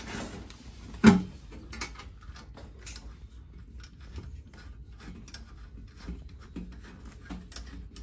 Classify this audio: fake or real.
real